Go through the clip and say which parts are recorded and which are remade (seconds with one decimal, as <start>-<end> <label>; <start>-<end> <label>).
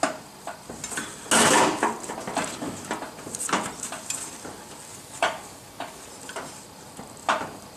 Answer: 0.0-4.9 recorded; 4.9-6.1 remade; 6.1-7.8 recorded